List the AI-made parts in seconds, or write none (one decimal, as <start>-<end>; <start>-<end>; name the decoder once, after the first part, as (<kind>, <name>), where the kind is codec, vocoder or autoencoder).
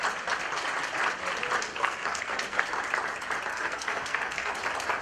1.7-2.6 (codec, SNAC); 3.5-4.5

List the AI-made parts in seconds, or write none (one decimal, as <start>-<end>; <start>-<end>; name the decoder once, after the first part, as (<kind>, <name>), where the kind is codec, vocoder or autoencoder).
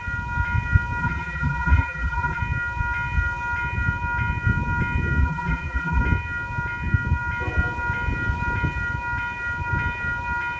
1.0-2.4 (vocoder, BigVGAN v2); 5.2-6.0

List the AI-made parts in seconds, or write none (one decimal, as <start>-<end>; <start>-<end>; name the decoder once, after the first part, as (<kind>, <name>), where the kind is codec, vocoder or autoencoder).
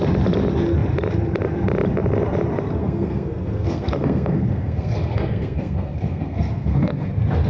2.8-7.1 (codec, SNAC)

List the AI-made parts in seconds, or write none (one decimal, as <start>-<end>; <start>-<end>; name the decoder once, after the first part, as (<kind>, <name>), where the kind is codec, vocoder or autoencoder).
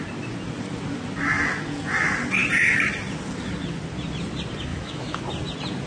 4.7-5.2 (autoencoder, DAC-VAE)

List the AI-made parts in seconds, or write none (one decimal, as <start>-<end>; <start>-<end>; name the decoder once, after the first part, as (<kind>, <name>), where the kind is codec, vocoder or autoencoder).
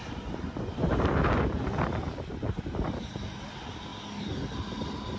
none